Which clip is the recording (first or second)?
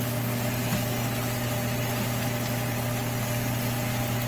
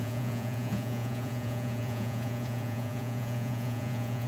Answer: first